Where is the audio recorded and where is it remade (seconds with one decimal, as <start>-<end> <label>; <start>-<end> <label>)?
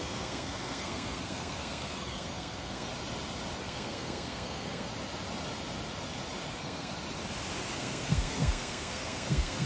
0.0-2.9 remade; 2.9-3.6 recorded; 3.6-4.9 remade; 4.9-6.5 recorded; 6.5-6.9 remade; 6.9-7.7 recorded; 7.7-9.7 remade